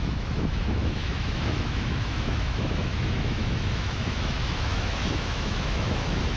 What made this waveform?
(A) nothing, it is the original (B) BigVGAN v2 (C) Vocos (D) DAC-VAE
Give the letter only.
D